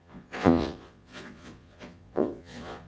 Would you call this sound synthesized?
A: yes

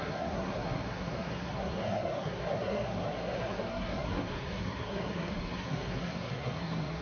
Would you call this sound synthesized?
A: yes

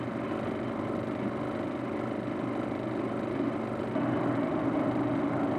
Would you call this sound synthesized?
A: no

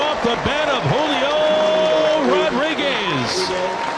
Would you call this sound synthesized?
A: no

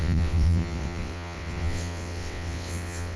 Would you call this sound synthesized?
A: yes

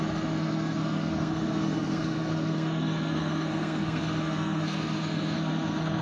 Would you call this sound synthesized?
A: yes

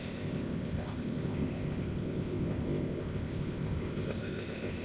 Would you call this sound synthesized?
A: yes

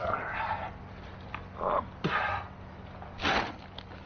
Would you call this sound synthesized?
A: no